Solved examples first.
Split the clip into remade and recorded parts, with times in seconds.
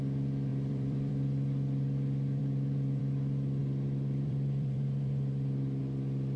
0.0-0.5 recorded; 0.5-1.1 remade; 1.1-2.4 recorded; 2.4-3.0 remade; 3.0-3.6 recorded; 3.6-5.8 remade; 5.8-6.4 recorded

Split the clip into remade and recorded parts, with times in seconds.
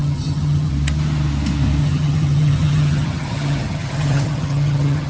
0.0-0.7 remade; 0.7-1.8 recorded; 1.8-5.1 remade